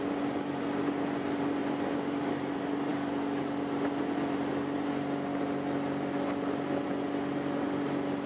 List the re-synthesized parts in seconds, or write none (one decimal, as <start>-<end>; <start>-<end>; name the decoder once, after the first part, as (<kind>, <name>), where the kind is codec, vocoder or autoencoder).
none